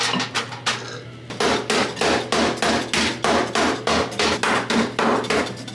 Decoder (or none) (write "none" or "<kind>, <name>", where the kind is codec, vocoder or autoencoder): none